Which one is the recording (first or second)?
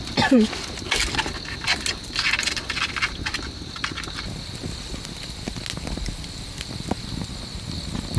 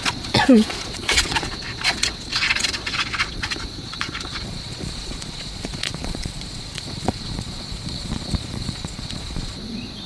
first